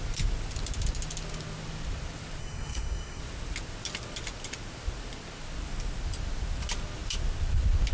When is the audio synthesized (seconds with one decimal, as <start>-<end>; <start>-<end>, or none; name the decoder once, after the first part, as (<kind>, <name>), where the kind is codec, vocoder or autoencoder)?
2.4-3.2 (codec, SNAC)